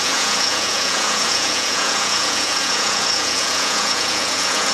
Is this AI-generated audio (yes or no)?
yes